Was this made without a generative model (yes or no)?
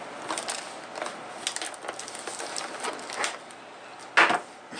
yes